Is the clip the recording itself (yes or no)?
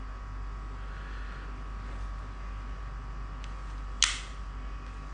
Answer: yes